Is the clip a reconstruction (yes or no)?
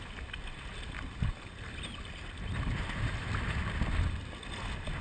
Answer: no